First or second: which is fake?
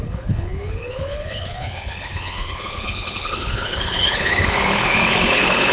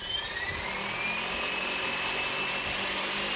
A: first